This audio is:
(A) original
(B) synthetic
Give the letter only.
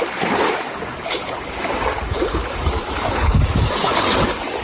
B